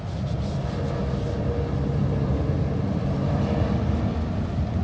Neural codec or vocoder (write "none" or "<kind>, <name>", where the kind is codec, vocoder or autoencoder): none